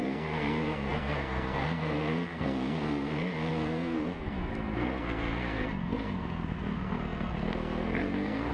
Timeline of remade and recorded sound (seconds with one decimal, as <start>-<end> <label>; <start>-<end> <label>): 0.0-8.5 remade